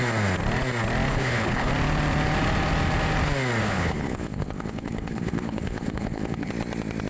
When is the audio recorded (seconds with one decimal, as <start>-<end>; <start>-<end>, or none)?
0.0-1.1; 1.7-3.6; 6.5-7.1